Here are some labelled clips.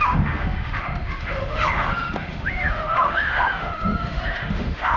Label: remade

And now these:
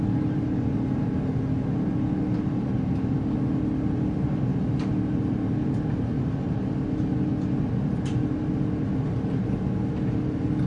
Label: recorded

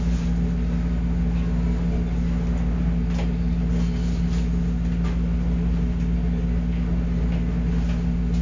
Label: recorded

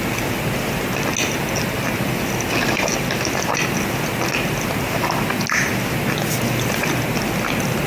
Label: recorded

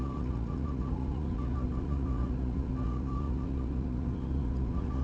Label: remade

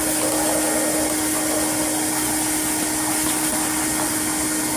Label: recorded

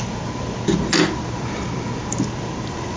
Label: recorded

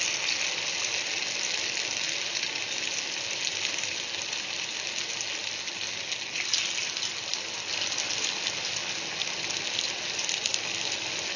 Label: recorded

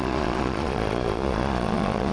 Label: remade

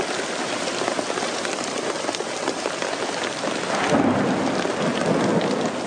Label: recorded